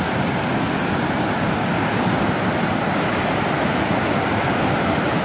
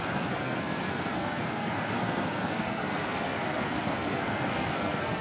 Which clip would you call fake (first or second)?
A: second